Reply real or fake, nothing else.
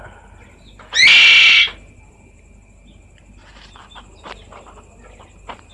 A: real